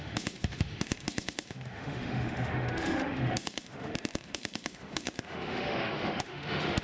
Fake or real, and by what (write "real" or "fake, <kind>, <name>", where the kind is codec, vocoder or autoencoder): fake, autoencoder, DAC-VAE